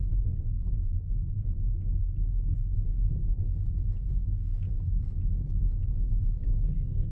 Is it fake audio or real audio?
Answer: fake